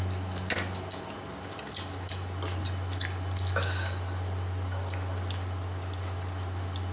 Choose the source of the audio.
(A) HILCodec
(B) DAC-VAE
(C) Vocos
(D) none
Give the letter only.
D